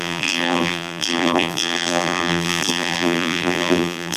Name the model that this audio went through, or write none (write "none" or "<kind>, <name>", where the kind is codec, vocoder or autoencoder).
vocoder, BigVGAN v2